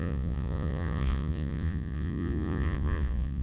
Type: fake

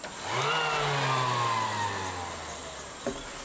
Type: real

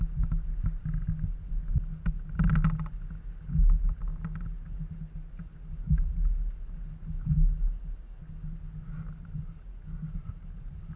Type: real